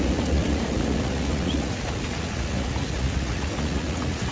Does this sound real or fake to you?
fake